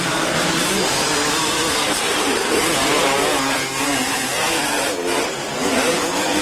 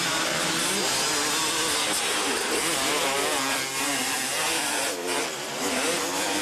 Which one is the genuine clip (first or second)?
second